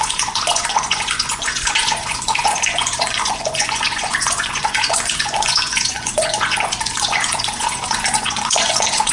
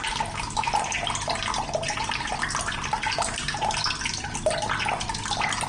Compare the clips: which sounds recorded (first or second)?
second